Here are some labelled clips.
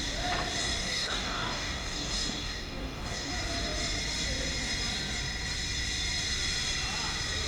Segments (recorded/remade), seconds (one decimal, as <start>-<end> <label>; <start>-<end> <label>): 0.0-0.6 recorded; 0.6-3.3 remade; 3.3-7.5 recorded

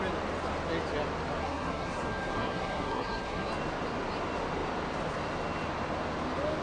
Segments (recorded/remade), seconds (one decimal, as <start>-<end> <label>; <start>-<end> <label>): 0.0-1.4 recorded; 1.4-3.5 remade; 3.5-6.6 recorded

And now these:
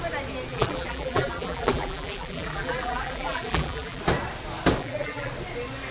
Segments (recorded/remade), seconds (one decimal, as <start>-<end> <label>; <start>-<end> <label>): 0.0-0.5 recorded; 0.5-4.0 remade; 4.0-4.8 recorded; 4.8-5.3 remade; 5.3-5.9 recorded

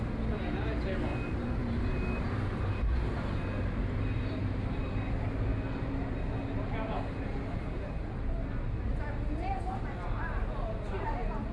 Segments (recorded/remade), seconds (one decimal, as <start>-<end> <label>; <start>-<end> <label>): 0.0-1.1 recorded; 1.1-5.3 remade; 5.3-7.6 recorded; 7.6-8.6 remade; 8.6-11.5 recorded